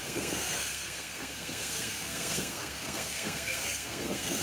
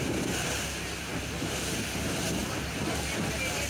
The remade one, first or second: first